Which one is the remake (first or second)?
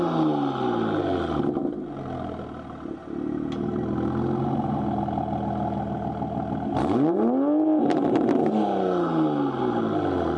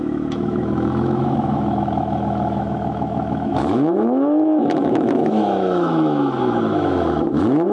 second